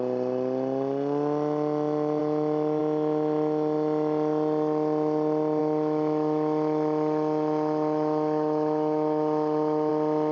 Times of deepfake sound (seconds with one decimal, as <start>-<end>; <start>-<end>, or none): 2.2-2.8; 5.6-9.9